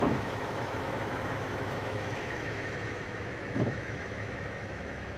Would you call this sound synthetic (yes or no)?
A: yes